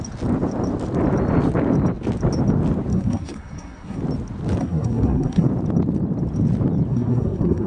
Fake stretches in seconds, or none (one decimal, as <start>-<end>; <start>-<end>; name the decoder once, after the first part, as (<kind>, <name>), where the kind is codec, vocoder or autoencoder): 2.9-4.0 (codec, SNAC); 4.6-5.5; 6.9-7.7